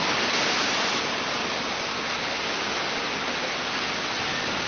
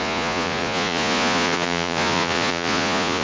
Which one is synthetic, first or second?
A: second